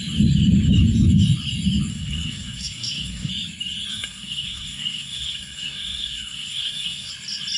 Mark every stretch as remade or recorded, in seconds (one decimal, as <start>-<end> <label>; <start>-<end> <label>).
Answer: 0.0-1.9 recorded; 1.9-3.3 remade; 3.3-3.9 recorded; 3.9-7.1 remade; 7.1-7.6 recorded